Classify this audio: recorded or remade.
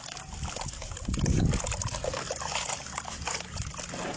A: recorded